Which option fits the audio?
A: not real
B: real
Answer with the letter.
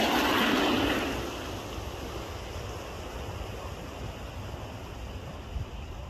B